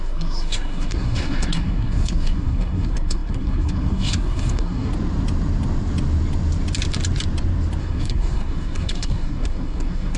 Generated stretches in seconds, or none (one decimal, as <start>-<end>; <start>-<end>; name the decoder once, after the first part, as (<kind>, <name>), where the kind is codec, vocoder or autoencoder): 0.0-4.9 (codec, SNAC); 7.8-10.2

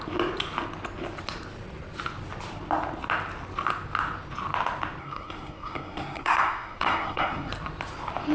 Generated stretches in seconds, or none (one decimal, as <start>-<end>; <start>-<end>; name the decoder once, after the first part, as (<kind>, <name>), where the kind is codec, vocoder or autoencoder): 5.0-7.5 (codec, SNAC)

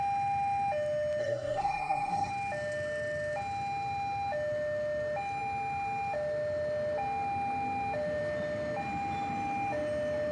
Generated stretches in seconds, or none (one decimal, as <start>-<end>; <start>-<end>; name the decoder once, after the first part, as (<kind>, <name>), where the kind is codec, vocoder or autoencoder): 1.2-2.3 (codec, SNAC)

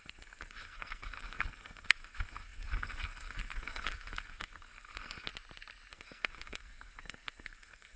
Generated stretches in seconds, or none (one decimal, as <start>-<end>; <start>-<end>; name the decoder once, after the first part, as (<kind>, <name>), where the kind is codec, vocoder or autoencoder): 0.0-5.3 (codec, SNAC); 5.9-8.0

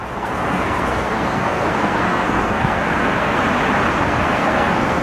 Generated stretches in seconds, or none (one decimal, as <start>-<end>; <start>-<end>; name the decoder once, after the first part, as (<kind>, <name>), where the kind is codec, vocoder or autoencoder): 0.0-3.4 (codec, SNAC); 3.9-5.0

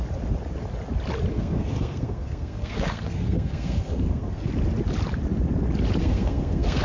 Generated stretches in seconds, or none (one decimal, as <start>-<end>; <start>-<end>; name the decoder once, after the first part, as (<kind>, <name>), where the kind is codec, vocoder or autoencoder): 1.3-4.5 (codec, SNAC); 6.0-6.8

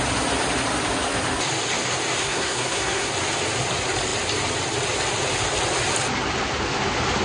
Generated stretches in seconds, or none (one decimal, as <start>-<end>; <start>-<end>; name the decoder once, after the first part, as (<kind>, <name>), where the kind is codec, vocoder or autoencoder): 2.2-3.1 (codec, SNAC)